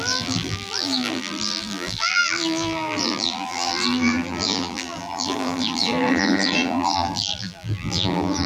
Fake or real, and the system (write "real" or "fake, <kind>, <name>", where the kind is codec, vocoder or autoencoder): fake, vocoder, BigVGAN v2